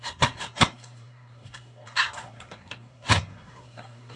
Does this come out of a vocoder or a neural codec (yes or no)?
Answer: yes